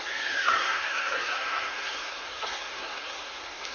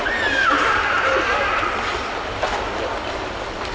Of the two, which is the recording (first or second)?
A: second